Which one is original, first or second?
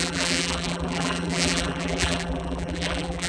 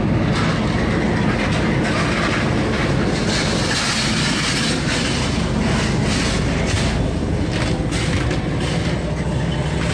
second